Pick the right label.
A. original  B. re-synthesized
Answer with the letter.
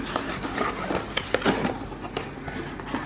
A